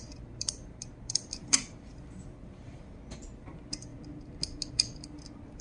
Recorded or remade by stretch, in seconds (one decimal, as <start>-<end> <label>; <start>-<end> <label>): 0.0-3.9 remade; 3.9-4.7 recorded; 4.7-5.6 remade